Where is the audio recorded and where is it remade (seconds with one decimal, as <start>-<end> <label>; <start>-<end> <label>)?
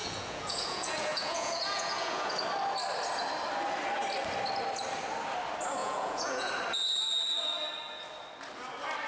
0.0-2.4 remade; 2.4-5.8 recorded; 5.8-6.5 remade; 6.5-9.1 recorded